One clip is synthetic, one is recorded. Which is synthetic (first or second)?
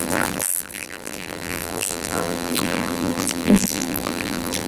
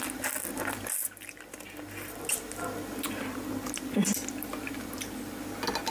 first